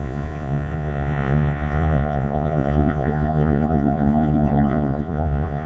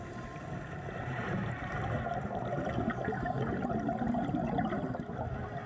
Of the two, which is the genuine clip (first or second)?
second